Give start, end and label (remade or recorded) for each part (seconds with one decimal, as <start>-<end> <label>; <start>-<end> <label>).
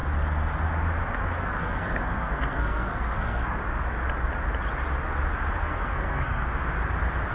0.0-1.4 recorded; 1.4-3.6 remade; 3.6-5.6 recorded; 5.6-6.5 remade; 6.5-7.3 recorded